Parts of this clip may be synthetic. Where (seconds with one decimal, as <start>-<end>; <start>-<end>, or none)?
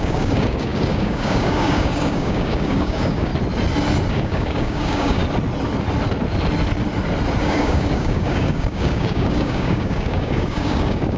0.0-3.3; 4.1-5.2; 7.4-11.2